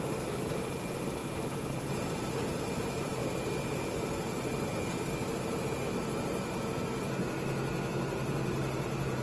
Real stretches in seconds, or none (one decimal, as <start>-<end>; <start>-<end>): 3.2-7.9